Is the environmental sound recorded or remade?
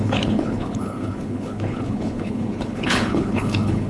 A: remade